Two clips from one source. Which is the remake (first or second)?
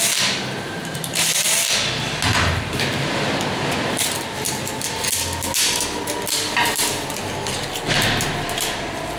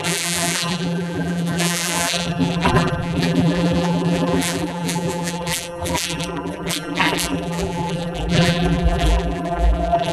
second